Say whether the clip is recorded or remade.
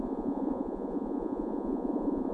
remade